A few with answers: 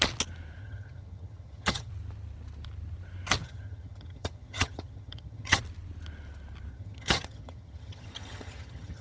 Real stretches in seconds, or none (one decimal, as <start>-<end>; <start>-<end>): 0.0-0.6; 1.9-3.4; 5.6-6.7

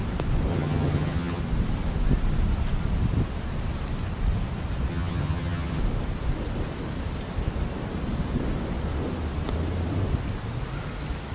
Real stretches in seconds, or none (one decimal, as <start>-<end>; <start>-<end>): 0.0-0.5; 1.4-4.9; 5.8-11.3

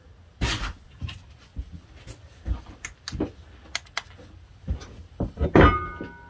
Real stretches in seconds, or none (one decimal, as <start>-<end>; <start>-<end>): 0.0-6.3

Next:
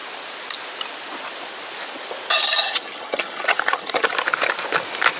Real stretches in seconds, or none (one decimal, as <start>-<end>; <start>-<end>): 0.0-2.6; 4.1-5.2

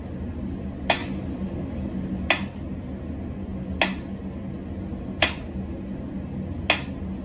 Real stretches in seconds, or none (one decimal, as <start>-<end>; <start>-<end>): 0.0-7.2

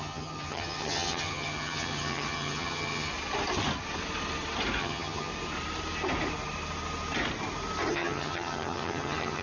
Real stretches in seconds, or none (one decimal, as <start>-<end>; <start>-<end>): 3.1-4.8; 5.3-7.9

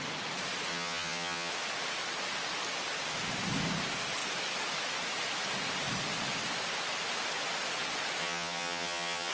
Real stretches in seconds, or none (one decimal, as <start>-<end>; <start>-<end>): 0.0-0.7; 1.5-8.2

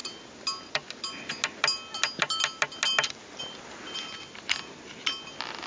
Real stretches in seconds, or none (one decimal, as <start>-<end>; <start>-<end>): 0.0-5.7